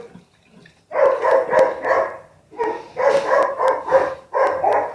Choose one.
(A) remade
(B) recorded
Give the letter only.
B